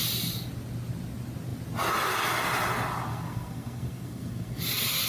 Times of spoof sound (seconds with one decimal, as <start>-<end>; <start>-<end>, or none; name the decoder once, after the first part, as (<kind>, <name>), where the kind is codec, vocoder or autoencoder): 3.1-4.6 (codec, SNAC)